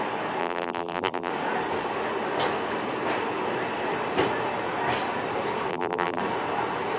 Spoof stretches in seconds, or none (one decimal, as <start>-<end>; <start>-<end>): 0.4-1.3; 5.7-6.2

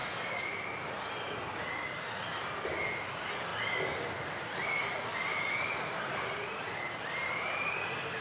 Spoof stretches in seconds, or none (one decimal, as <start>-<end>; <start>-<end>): 2.4-3.1

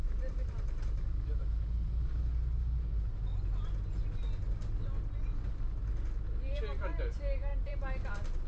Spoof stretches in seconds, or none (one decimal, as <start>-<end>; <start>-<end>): 0.0-1.4; 6.5-8.5

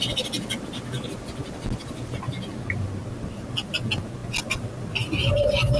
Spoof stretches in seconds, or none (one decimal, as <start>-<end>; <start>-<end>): none

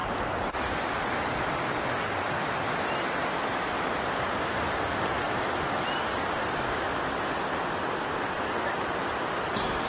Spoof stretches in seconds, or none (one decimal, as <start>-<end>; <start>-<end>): 0.0-0.5; 3.5-5.4